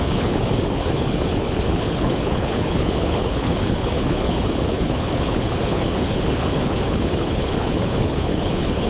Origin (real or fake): fake